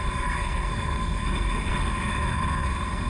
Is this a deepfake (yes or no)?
yes